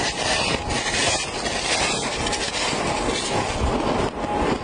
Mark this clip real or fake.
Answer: real